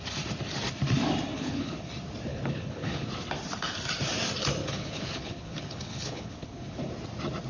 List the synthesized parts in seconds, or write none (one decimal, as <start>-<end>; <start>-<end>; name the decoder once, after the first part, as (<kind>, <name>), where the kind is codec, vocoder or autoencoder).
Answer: 1.3-1.9 (codec, HILCodec); 2.3-3.1; 4.6-6.9